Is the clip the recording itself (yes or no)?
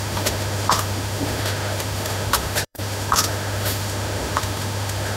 no